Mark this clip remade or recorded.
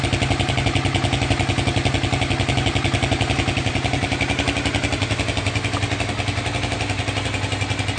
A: recorded